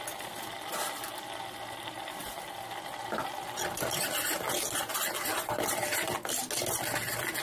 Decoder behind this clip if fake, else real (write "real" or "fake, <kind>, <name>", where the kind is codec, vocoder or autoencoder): real